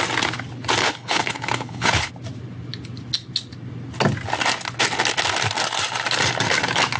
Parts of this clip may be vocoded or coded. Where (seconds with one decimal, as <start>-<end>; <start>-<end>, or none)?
0.8-2.1